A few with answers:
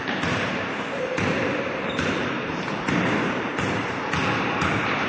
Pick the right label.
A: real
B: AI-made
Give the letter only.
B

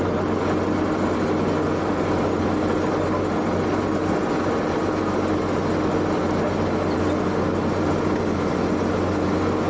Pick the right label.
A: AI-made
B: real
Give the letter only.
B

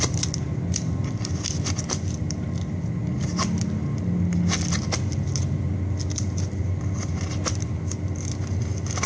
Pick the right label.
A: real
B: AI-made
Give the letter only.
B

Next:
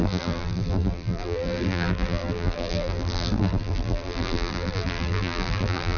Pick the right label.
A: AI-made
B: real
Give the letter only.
A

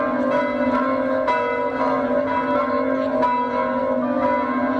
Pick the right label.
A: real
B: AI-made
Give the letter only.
A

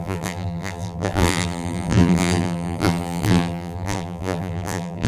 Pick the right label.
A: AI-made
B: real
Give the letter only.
A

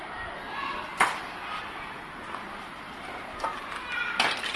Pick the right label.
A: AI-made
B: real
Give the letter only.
B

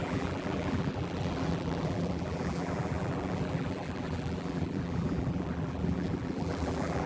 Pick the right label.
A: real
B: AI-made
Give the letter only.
B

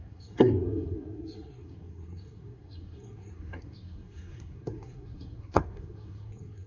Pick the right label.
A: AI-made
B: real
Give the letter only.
A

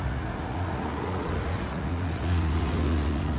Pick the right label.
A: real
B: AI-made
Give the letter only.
B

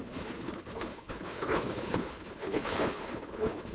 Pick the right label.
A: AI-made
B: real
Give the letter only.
A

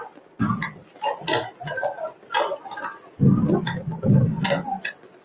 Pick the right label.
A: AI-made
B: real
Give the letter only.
B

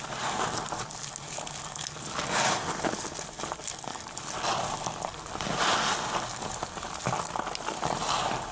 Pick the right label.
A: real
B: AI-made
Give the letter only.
A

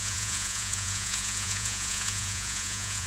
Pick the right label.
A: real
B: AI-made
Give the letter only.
B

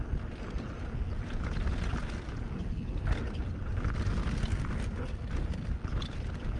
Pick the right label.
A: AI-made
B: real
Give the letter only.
B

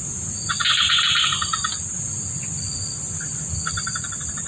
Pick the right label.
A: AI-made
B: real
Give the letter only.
B